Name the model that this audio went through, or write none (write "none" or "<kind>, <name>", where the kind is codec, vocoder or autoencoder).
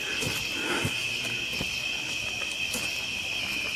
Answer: none